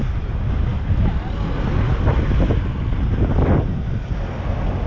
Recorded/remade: recorded